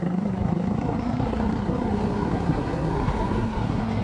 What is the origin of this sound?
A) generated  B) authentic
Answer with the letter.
A